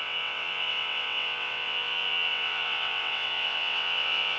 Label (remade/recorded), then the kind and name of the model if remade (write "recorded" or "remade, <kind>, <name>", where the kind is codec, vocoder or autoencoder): remade, vocoder, WaveNeXt